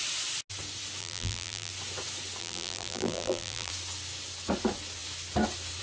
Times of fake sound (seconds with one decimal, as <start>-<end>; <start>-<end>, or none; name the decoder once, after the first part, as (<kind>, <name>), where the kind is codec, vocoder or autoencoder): 1.0-1.7 (vocoder, BigVGAN v2); 2.4-3.7